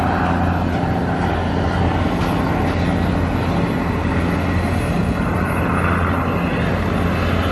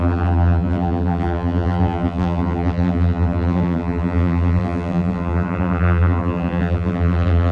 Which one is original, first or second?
first